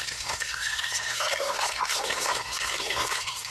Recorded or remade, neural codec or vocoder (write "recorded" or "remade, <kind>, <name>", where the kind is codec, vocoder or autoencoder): remade, codec, SNAC